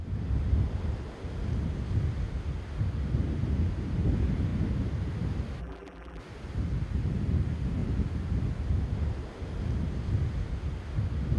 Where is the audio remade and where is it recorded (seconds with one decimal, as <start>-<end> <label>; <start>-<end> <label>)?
0.0-5.6 recorded; 5.6-6.2 remade; 6.2-11.4 recorded

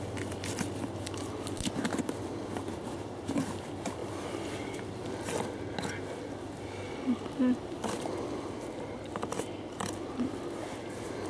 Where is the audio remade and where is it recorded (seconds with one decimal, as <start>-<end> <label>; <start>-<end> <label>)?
0.0-2.6 recorded; 2.6-3.4 remade; 3.4-11.3 recorded

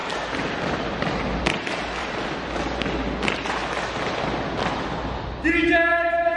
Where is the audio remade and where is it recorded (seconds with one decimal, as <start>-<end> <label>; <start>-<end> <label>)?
0.0-2.1 remade; 2.1-3.6 recorded; 3.6-4.2 remade; 4.2-6.4 recorded

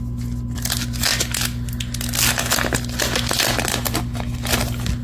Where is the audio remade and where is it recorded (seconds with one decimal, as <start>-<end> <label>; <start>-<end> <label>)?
0.0-5.0 recorded

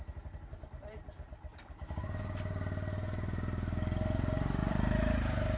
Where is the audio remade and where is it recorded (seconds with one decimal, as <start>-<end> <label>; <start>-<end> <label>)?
0.0-4.6 recorded; 4.6-5.6 remade

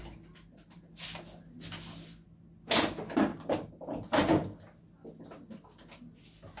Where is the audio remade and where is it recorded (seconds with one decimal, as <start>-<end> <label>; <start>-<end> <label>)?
0.0-3.3 recorded; 3.3-4.5 remade; 4.5-6.6 recorded

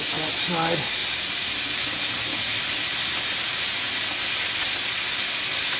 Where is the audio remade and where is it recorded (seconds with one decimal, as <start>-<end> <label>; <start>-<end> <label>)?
0.0-5.8 recorded

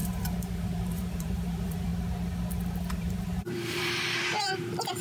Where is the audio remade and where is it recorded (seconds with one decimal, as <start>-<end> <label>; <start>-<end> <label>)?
0.0-1.9 remade; 1.9-2.9 recorded; 2.9-5.0 remade